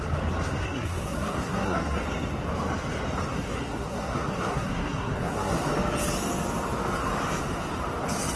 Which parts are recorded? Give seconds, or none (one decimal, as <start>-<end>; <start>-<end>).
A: 0.0-0.6; 2.0-3.3; 5.7-8.4